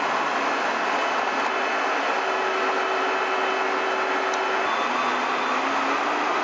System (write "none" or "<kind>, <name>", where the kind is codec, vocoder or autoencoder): none